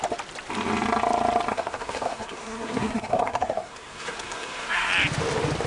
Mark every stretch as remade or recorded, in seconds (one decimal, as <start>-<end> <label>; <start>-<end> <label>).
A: 0.0-1.5 recorded; 1.5-4.9 remade; 4.9-5.7 recorded